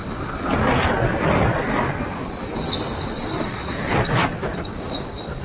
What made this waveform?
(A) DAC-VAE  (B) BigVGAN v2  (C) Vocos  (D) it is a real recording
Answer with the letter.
D